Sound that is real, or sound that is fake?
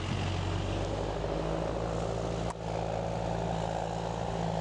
real